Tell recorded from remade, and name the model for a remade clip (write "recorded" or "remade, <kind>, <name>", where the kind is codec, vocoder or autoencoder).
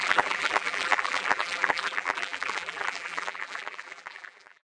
remade, vocoder, BigVGAN v2